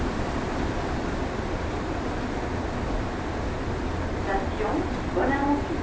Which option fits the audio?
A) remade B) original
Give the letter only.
B